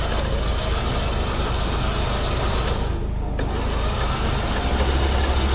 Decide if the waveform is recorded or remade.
recorded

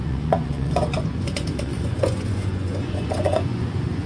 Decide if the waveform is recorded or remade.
remade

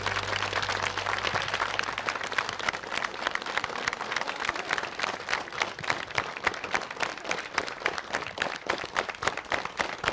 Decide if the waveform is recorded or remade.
recorded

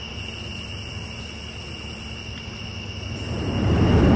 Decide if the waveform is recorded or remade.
recorded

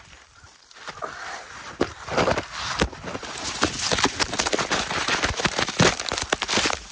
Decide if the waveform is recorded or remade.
remade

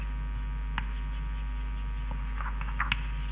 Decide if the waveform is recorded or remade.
recorded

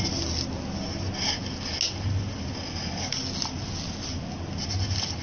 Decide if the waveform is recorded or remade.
recorded